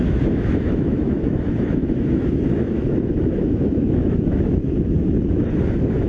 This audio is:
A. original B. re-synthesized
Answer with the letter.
B